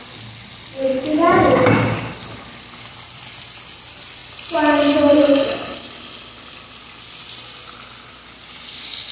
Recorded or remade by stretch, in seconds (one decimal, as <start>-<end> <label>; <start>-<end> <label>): 0.0-9.1 recorded